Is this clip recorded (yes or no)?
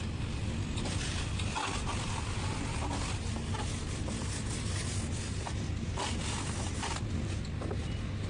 yes